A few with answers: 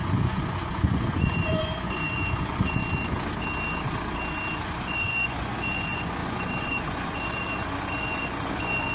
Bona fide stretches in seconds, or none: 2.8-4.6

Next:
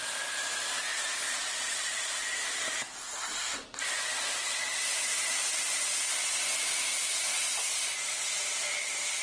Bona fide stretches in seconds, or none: 0.0-0.9; 2.2-9.2

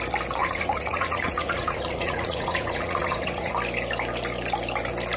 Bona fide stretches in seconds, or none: 0.0-0.4; 3.5-5.2

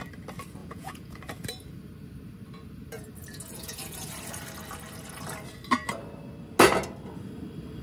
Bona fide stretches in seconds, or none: 0.0-0.6; 1.2-3.4; 4.1-7.8

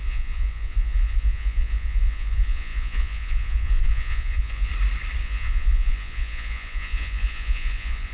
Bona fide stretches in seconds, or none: 4.7-5.2